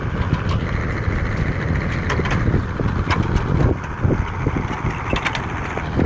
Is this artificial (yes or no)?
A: no